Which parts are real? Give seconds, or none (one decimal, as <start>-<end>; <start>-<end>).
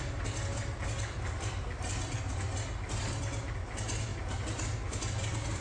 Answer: 0.0-5.6